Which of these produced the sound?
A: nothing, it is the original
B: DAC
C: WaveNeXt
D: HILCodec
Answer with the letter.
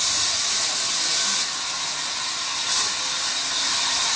A